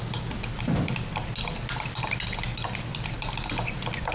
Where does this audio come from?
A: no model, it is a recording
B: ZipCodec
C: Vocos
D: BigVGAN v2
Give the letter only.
A